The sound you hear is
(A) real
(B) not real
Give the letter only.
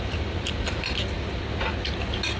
A